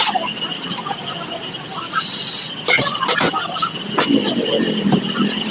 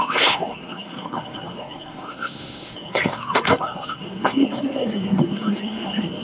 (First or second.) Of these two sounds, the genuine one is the first